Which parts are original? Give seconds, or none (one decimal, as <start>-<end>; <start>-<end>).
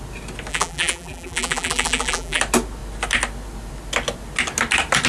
0.0-0.5; 2.4-5.1